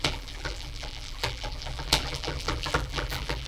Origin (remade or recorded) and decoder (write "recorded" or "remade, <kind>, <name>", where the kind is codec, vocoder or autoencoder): remade, vocoder, BigVGAN v2